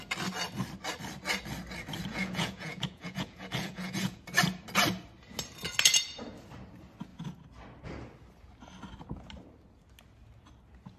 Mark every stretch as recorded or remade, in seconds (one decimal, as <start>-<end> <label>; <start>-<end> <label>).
0.0-2.1 recorded; 2.1-4.2 remade; 4.2-11.0 recorded